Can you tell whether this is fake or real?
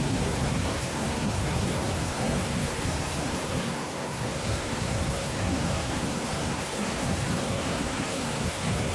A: fake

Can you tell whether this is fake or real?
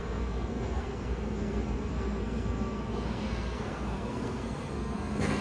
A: fake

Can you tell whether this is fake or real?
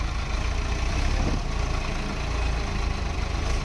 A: real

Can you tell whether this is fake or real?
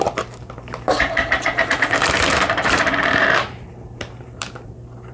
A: fake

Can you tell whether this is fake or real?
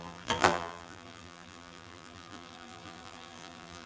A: fake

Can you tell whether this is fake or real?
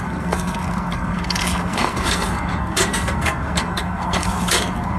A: fake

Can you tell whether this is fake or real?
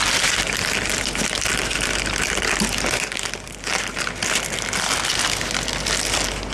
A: real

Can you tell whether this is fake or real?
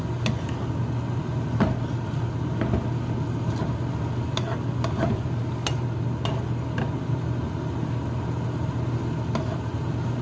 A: real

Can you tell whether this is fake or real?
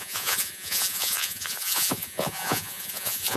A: fake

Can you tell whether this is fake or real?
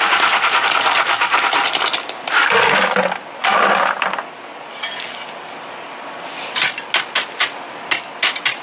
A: real